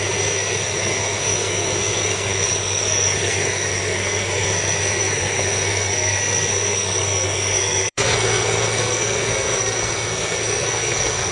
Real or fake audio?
fake